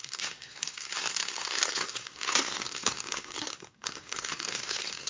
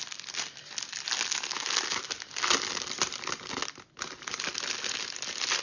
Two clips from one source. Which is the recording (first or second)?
second